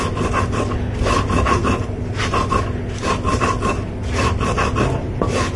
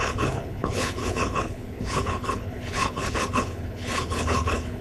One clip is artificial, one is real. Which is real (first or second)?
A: first